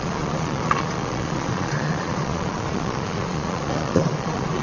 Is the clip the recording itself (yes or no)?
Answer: no